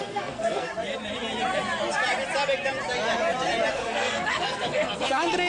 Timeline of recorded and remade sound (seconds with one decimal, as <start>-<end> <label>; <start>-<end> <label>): 0.0-0.7 remade; 0.7-3.7 recorded; 3.7-5.5 remade